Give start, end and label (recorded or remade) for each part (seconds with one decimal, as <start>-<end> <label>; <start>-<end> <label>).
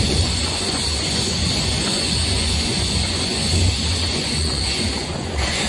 0.0-5.7 remade